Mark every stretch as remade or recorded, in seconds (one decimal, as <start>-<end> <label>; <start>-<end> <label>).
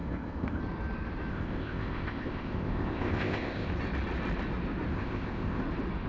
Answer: 0.0-0.6 remade; 0.6-1.3 recorded; 1.3-3.7 remade; 3.7-4.9 recorded; 4.9-5.6 remade; 5.6-6.1 recorded